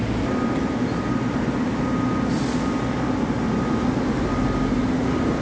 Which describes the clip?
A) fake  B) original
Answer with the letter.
B